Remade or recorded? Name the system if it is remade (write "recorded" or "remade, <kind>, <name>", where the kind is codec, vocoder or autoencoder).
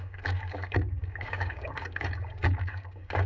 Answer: remade, codec, DAC